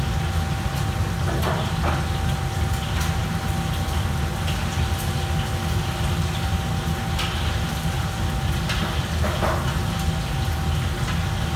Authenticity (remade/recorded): recorded